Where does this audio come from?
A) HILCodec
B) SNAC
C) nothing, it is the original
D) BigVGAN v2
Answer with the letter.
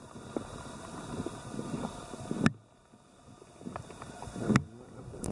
C